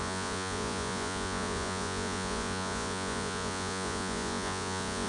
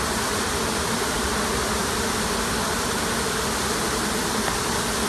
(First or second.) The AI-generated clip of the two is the first